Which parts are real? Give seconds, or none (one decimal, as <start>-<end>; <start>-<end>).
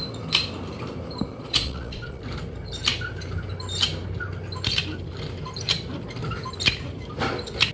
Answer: 0.0-1.3; 2.2-7.7